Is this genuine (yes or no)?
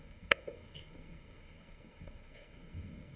no